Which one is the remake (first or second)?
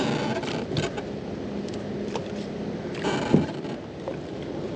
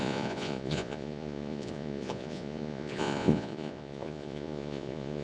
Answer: second